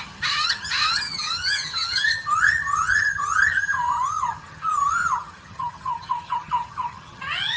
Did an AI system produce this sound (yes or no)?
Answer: yes